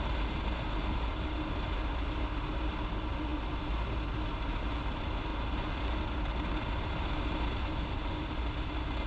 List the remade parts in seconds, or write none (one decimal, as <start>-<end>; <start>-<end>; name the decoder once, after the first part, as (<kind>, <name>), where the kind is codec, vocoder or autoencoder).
none